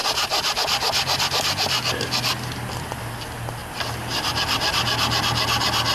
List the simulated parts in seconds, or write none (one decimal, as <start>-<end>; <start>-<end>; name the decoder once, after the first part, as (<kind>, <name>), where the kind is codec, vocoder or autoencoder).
none